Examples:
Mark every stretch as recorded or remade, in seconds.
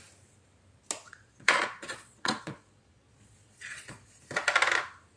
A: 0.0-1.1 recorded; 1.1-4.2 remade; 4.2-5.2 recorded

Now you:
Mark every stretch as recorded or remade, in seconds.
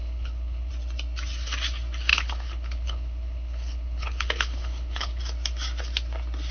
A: 0.0-0.7 remade; 0.7-2.1 recorded; 2.1-5.2 remade; 5.2-6.5 recorded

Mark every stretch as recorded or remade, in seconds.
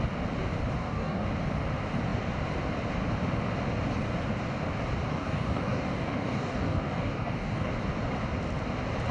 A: 0.0-0.8 recorded; 0.8-1.3 remade; 1.3-5.1 recorded; 5.1-7.7 remade; 7.7-9.1 recorded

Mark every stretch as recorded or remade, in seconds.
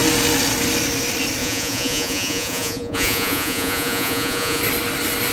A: 0.0-1.4 recorded; 1.4-4.6 remade; 4.6-5.3 recorded